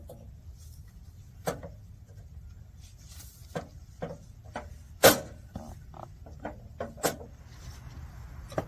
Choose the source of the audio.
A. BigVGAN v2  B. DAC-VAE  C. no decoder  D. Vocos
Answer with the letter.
C